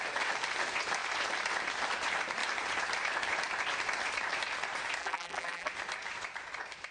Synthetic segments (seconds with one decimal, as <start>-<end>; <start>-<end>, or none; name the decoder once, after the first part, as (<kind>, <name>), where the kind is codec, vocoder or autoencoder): 5.0-5.7 (vocoder, BigVGAN v2)